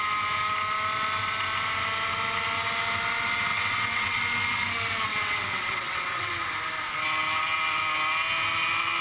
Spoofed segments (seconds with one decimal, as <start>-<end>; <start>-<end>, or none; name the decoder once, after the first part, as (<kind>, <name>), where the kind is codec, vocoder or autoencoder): 3.5-4.2 (vocoder, WaveNeXt); 5.1-6.3